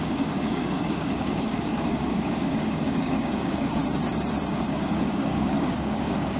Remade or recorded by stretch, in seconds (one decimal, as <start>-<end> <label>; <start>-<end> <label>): 0.0-3.8 remade; 3.8-4.5 recorded; 4.5-6.4 remade